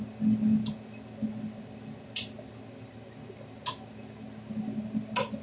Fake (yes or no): no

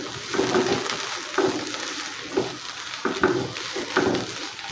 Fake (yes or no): no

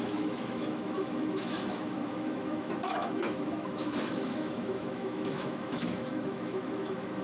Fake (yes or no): yes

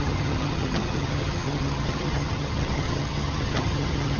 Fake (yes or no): yes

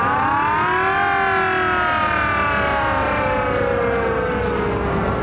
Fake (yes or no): no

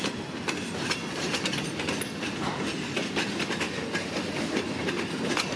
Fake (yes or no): no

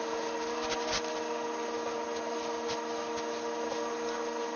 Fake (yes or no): no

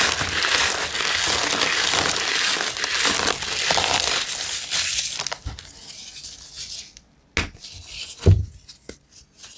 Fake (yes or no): no